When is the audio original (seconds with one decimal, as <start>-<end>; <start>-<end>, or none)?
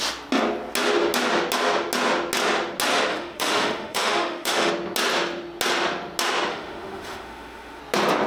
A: 0.0-3.1; 4.7-6.5; 7.8-8.3